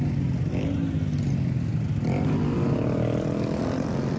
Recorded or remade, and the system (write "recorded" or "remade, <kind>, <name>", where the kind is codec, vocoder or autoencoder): recorded